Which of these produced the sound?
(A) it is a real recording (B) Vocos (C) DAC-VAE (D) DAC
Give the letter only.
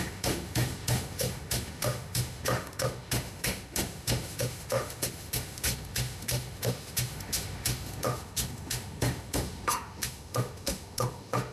C